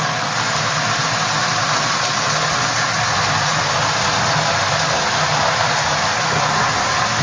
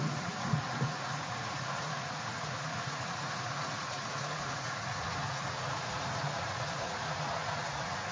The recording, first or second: first